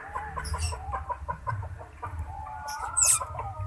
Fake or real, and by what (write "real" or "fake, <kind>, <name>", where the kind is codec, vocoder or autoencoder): fake, vocoder, BigVGAN v2